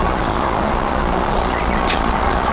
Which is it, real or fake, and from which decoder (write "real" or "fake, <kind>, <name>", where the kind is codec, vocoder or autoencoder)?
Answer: fake, vocoder, Vocos